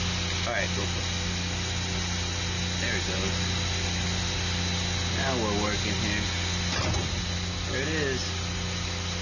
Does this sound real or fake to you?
real